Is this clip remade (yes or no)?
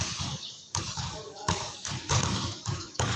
yes